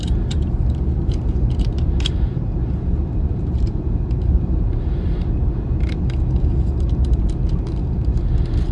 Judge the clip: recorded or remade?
remade